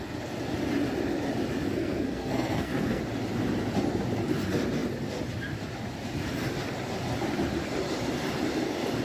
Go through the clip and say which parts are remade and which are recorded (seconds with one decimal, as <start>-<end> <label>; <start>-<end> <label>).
0.0-1.7 recorded; 1.7-3.0 remade; 3.0-9.0 recorded